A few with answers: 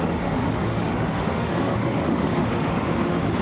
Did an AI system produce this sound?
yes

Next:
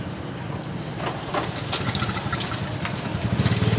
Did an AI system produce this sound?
no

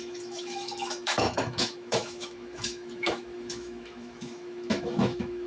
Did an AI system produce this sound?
yes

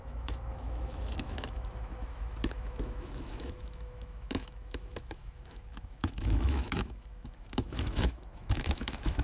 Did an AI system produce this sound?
yes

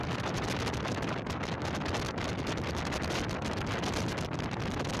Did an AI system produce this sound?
no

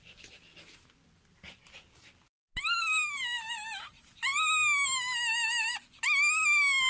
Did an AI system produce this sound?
no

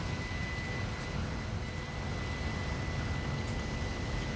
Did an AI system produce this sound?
no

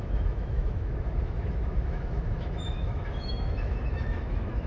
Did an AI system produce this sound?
yes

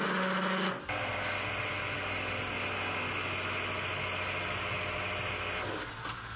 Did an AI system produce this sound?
no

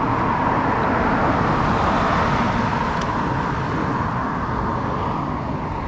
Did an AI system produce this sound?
no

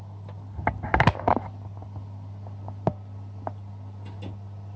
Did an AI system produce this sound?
no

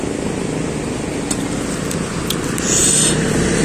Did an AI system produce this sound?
no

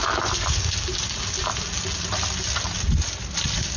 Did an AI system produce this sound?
no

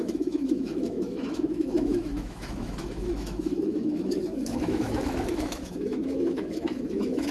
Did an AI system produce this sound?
yes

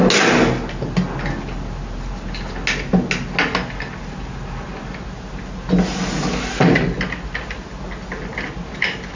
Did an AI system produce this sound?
no